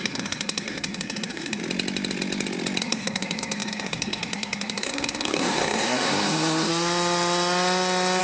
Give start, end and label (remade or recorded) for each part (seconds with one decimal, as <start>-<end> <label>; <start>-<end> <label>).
0.0-1.6 remade; 1.6-2.8 recorded; 2.8-6.7 remade; 6.7-8.2 recorded